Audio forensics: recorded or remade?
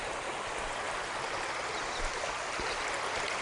recorded